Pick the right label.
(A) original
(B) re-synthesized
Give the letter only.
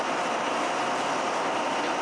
A